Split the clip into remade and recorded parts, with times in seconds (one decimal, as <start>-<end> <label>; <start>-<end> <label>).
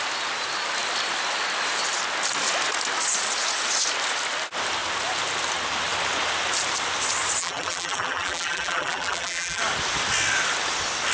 0.0-7.4 recorded; 7.4-9.6 remade; 9.6-11.1 recorded